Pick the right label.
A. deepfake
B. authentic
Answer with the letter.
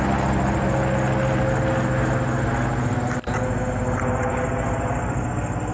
B